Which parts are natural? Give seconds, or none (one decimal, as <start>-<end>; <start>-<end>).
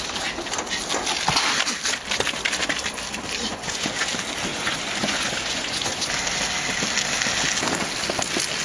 0.0-3.5; 4.1-4.5; 6.1-8.6